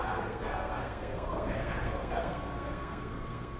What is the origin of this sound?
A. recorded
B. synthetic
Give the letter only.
B